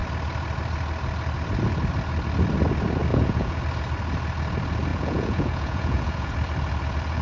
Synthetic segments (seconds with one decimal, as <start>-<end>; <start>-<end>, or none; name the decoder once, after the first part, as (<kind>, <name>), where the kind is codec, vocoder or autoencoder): 3.1-3.6 (vocoder, Vocos); 4.9-6.3